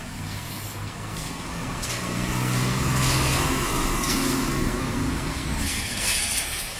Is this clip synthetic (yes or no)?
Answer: yes